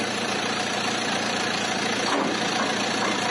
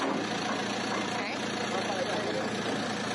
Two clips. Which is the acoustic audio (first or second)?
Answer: second